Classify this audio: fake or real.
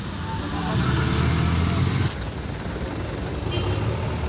real